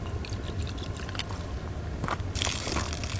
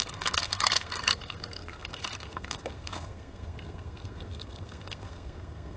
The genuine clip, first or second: first